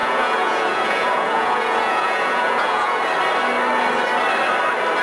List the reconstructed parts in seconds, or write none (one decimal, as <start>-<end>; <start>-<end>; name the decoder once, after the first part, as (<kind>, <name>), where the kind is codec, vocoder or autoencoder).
0.0-3.0 (vocoder, Vocos)